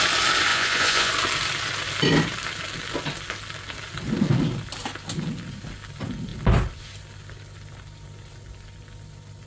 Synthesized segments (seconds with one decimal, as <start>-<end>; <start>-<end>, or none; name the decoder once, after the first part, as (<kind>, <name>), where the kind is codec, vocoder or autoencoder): 0.5-1.1 (vocoder, Vocos)